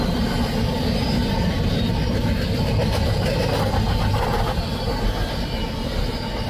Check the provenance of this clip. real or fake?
real